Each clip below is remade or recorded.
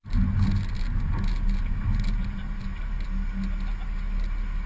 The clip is recorded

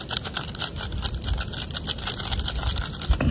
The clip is recorded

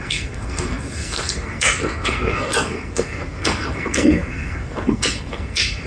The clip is remade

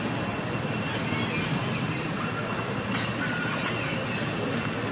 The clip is recorded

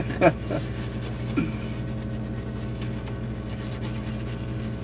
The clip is recorded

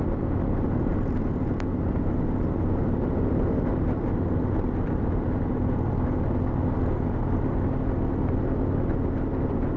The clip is recorded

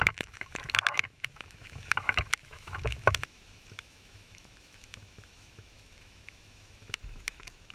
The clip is remade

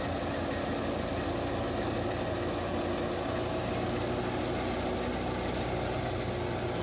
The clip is recorded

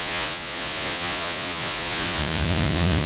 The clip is remade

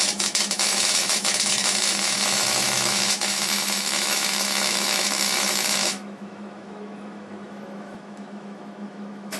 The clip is remade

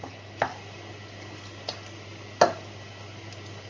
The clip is recorded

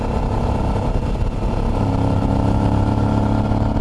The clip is recorded